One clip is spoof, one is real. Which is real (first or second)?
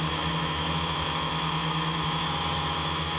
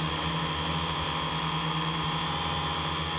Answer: second